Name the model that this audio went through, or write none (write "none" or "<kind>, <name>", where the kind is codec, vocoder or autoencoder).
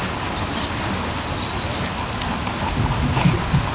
none